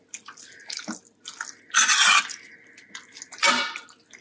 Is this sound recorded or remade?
recorded